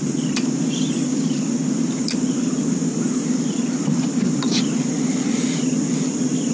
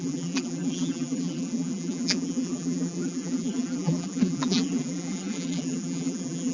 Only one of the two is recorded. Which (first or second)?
first